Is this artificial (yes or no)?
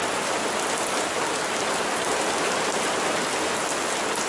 no